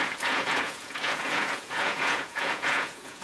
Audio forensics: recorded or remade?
remade